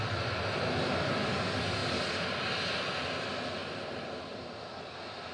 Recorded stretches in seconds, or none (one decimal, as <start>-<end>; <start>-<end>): 0.0-3.6; 4.6-5.3